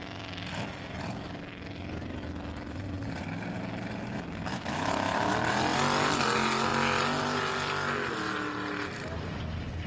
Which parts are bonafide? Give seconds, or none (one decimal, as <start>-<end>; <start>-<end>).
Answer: 0.0-4.5; 5.3-9.9